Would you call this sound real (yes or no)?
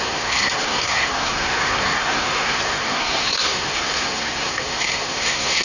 no